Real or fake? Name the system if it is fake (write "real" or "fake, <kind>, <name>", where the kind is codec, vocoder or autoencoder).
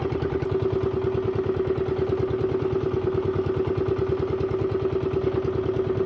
real